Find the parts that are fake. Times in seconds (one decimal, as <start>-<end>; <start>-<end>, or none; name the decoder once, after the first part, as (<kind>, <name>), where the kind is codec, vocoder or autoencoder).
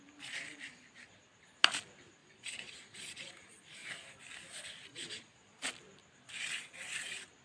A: 2.2-3.3 (vocoder, Vocos); 4.9-5.6